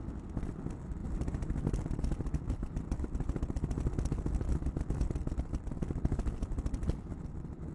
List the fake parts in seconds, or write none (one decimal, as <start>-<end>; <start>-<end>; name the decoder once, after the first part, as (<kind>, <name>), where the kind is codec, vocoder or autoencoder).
1.0-3.8 (vocoder, BigVGAN v2)